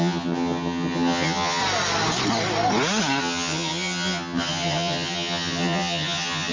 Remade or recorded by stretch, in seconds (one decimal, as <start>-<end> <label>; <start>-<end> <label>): 0.0-1.6 remade; 1.6-3.2 recorded; 3.2-6.5 remade